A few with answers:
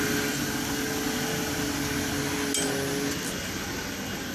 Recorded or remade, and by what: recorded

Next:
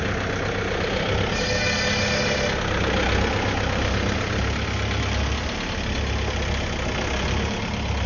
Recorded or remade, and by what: recorded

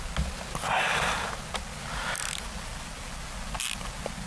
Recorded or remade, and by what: recorded